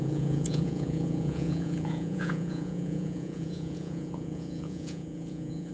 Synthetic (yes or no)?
yes